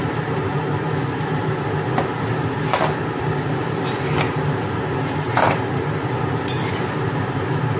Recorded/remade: remade